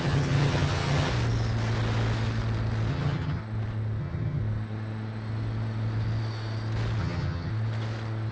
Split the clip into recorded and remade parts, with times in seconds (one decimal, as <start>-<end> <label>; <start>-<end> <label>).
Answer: 0.0-1.1 remade; 1.1-2.9 recorded; 2.9-3.4 remade; 3.4-4.0 recorded; 4.0-4.4 remade; 4.4-7.0 recorded; 7.0-7.5 remade; 7.5-8.3 recorded